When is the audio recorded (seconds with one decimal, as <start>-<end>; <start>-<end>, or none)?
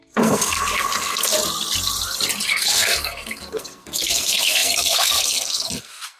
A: 1.3-2.5